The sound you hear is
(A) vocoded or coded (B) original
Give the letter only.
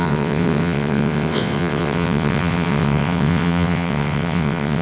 A